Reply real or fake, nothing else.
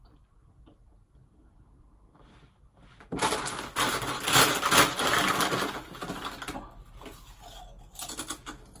real